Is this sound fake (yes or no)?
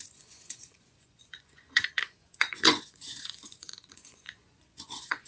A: yes